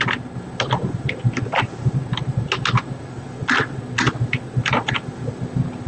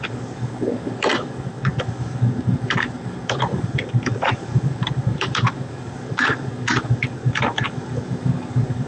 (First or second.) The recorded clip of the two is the first